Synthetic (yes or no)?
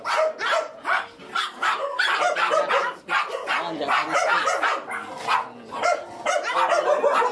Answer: no